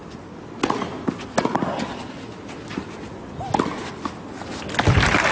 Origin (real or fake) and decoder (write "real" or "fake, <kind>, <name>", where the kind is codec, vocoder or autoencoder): real